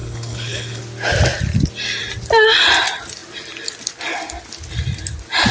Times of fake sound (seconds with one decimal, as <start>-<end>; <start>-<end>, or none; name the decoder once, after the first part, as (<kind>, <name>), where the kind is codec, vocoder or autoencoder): 0.0-0.8 (codec, HILCodec)